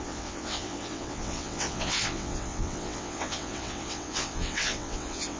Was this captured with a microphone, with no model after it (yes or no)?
no